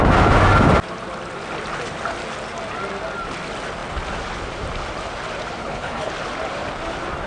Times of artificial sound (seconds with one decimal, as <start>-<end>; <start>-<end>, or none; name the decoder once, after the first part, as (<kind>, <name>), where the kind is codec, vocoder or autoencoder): 5.6-6.1 (codec, HILCodec)